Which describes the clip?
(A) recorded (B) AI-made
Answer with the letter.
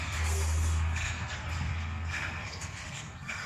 B